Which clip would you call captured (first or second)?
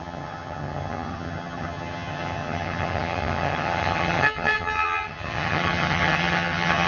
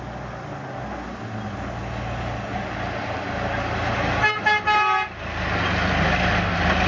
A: second